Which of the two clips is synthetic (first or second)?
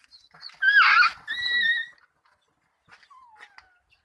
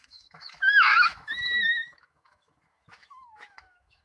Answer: second